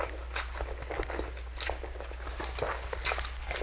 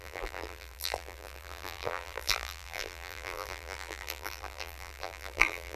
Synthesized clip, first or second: second